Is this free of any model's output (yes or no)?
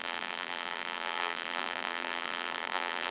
no